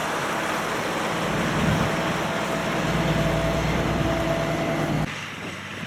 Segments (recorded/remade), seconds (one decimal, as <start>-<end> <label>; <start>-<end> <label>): 0.0-1.0 recorded; 1.0-2.6 remade; 2.6-3.3 recorded; 3.3-5.9 remade